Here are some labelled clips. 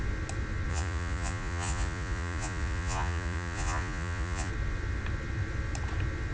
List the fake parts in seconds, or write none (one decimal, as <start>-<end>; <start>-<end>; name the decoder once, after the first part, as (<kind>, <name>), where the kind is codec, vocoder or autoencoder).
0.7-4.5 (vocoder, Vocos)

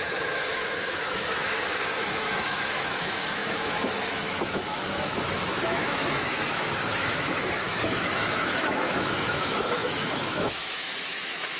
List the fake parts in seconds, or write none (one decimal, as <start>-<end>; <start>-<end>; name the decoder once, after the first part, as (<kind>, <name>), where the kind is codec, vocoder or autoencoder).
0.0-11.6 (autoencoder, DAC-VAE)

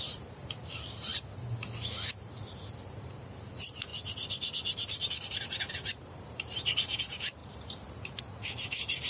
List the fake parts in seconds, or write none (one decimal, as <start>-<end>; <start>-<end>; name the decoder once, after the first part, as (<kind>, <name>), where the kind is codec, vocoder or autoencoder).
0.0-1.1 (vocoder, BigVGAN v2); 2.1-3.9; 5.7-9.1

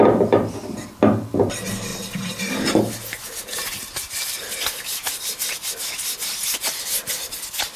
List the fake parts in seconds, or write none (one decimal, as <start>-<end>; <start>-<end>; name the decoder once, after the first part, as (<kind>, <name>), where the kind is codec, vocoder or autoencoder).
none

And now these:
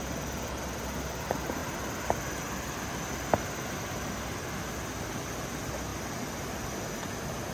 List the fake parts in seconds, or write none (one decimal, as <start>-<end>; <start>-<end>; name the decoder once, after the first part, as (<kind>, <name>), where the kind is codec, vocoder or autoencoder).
none

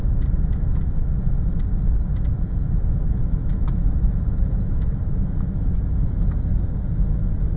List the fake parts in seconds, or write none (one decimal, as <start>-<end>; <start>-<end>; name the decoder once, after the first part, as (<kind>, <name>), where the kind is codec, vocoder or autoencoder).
3.0-6.0 (autoencoder, DAC-VAE)

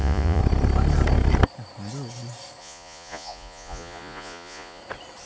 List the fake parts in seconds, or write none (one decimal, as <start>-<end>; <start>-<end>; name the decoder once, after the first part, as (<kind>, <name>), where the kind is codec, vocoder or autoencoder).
0.0-0.4 (vocoder, Vocos); 2.6-4.8

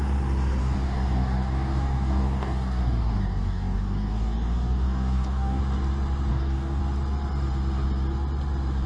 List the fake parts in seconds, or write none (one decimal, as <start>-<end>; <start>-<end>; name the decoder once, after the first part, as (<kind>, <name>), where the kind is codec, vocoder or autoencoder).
0.6-5.6 (codec, DAC); 6.3-6.8